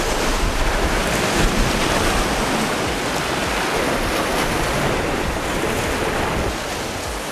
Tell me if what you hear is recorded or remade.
recorded